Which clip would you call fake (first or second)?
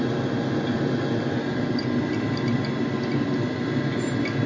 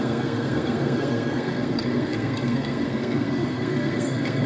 second